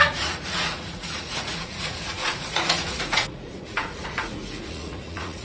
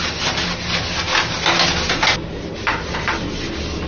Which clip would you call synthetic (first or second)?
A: first